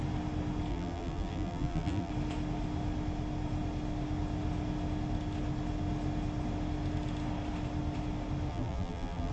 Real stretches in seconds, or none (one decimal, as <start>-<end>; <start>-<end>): 0.0-0.7; 2.1-8.5

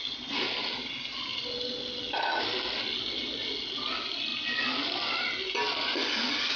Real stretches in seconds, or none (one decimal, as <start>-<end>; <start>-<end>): 0.0-6.6

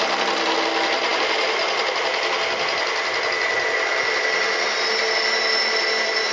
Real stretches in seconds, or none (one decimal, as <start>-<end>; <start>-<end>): 0.0-6.3